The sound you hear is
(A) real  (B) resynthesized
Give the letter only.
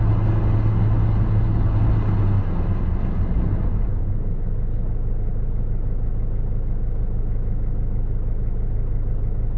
A